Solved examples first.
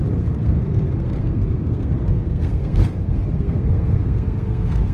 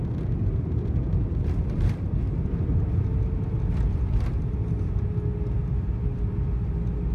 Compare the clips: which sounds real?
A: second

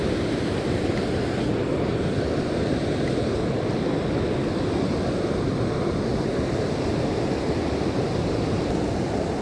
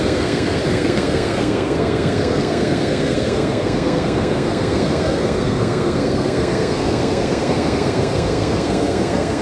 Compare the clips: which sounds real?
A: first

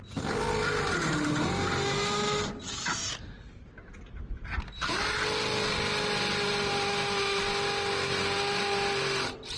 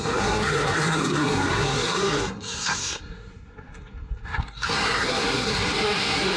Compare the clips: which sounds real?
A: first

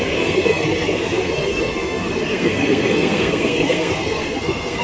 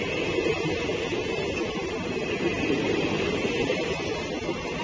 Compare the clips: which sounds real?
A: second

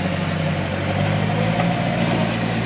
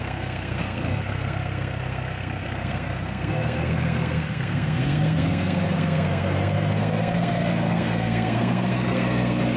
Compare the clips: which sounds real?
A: first